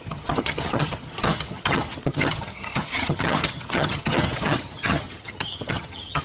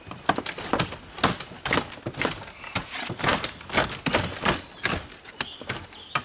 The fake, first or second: first